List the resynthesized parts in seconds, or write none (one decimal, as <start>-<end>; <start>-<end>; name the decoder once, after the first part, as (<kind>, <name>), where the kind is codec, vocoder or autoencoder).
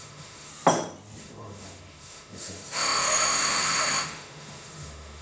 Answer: 0.0-0.5 (autoencoder, DAC-VAE); 1.2-5.2